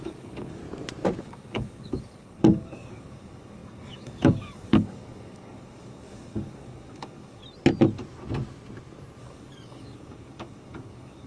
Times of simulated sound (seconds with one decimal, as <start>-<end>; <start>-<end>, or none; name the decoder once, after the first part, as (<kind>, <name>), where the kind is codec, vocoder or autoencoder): 0.0-0.6 (codec, DAC); 1.2-7.4; 9.2-11.3